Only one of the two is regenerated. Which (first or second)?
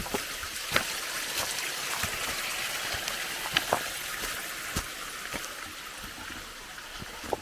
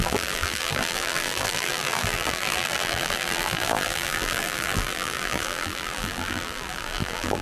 second